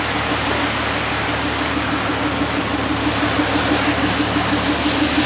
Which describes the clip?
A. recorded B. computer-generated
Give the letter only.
A